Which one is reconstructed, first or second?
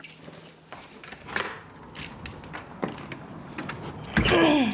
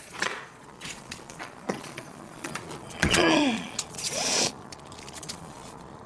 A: second